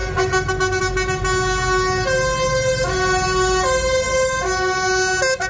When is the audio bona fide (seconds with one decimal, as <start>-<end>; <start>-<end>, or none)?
0.0-5.5